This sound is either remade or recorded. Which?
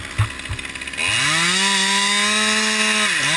recorded